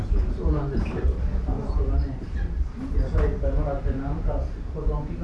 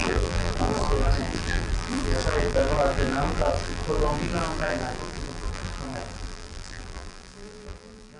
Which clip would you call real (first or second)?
first